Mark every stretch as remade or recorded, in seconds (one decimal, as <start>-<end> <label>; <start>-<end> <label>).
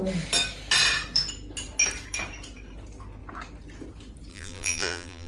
0.0-4.3 recorded; 4.3-5.3 remade